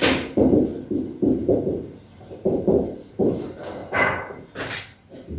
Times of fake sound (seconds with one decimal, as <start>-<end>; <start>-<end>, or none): 0.0-0.6; 1.4-2.7; 3.8-4.8